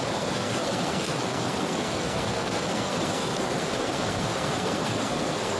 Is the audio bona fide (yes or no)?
no